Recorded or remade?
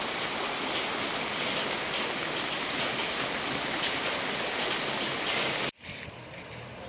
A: recorded